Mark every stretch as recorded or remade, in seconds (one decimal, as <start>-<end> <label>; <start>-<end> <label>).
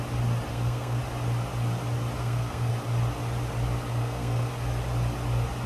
0.0-0.5 recorded; 0.5-1.0 remade; 1.0-2.2 recorded; 2.2-2.7 remade; 2.7-3.9 recorded; 3.9-4.5 remade; 4.5-5.7 recorded